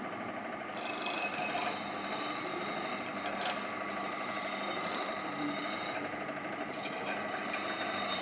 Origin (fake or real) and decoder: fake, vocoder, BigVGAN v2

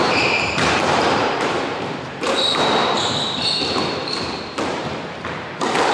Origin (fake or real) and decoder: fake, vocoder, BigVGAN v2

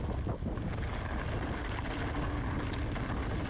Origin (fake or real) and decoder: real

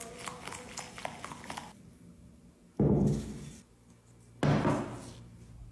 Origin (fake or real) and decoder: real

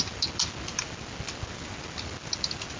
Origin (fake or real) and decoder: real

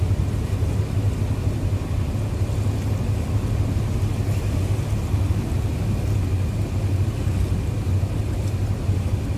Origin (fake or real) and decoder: real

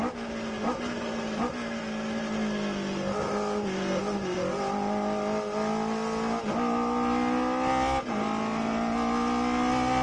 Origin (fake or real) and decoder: real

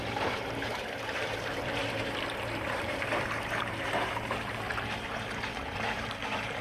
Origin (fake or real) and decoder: fake, vocoder, BigVGAN v2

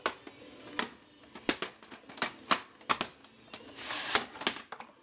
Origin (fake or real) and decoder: real